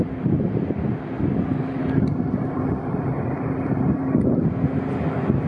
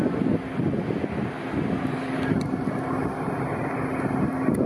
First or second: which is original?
second